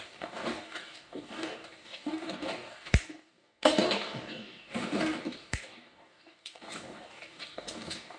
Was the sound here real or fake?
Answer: fake